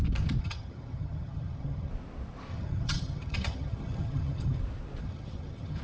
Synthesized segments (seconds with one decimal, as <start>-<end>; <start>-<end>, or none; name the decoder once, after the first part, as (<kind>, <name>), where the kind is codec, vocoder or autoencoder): 0.4-1.9 (vocoder, HiFi-GAN); 2.5-4.6; 5.0-5.8